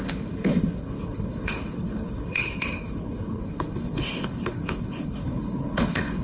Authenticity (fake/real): fake